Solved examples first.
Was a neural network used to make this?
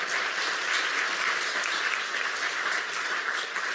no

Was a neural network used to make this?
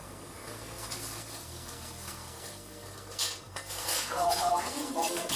yes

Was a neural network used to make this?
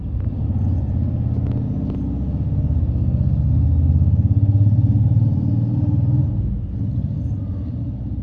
no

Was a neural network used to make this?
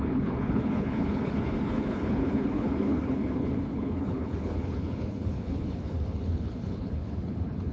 yes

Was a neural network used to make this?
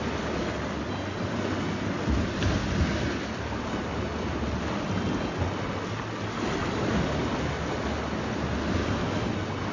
no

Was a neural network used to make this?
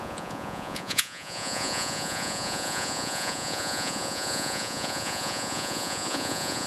yes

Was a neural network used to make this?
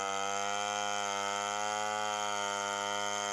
no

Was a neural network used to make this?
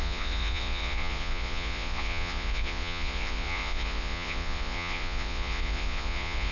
yes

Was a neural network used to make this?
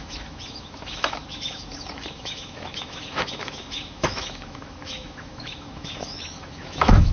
yes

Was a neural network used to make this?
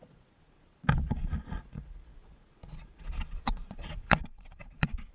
yes